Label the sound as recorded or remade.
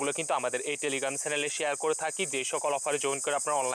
recorded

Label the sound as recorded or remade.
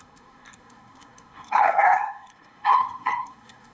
remade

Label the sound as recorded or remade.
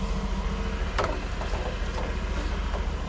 recorded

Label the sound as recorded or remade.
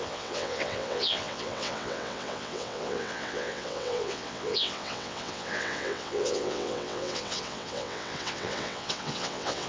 remade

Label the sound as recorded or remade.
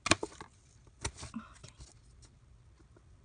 recorded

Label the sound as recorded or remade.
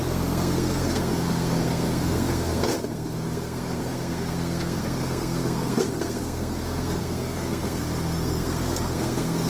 remade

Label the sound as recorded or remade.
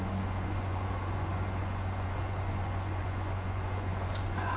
remade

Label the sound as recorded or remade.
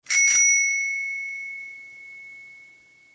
recorded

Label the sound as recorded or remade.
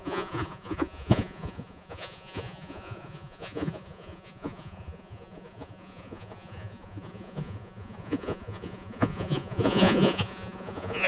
remade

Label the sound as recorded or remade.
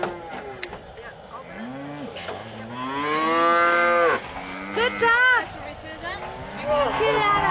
recorded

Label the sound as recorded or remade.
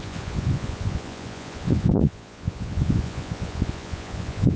remade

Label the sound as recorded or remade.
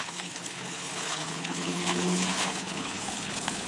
remade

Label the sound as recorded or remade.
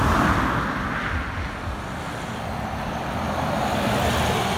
recorded